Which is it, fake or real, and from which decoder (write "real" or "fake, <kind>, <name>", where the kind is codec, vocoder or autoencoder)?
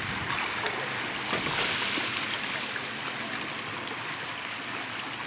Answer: real